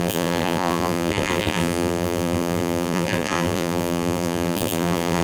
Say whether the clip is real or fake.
fake